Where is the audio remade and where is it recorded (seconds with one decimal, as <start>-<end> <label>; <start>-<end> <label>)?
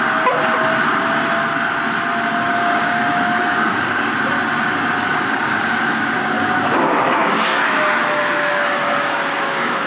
0.0-2.3 recorded; 2.3-4.1 remade; 4.1-5.1 recorded; 5.1-9.9 remade